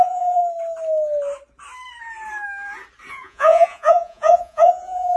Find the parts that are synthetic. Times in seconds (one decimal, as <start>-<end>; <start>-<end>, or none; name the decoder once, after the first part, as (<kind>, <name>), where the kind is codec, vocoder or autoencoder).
0.0-0.4 (vocoder, Vocos); 3.1-5.2